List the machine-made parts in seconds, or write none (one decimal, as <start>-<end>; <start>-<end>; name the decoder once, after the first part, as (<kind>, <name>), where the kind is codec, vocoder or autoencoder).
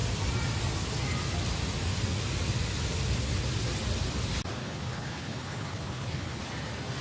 4.6-6.4 (codec, HILCodec)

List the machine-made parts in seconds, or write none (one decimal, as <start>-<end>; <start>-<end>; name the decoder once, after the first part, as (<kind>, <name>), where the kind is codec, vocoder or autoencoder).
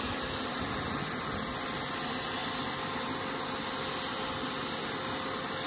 none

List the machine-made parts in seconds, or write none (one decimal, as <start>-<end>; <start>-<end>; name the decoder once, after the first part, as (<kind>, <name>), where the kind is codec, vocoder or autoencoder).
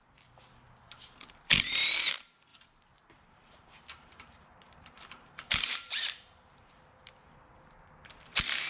2.5-7.1 (vocoder, BigVGAN v2)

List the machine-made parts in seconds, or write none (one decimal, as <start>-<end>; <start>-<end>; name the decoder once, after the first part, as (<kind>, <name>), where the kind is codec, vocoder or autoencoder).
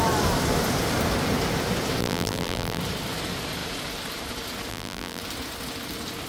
2.0-2.8 (vocoder, BigVGAN v2); 4.7-5.2